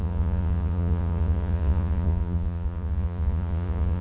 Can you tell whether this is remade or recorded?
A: remade